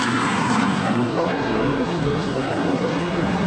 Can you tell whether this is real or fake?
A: fake